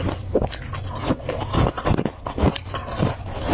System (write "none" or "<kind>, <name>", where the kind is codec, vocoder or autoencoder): none